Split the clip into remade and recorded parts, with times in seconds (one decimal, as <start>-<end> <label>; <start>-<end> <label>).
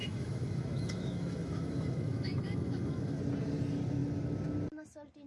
0.0-3.2 remade; 3.2-5.3 recorded